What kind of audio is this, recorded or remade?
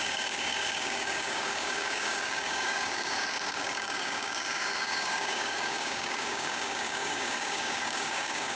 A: remade